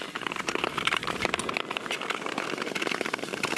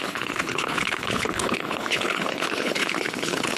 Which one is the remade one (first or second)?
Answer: second